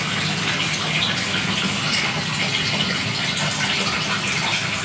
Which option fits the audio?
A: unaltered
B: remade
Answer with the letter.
A